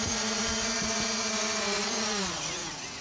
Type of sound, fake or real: fake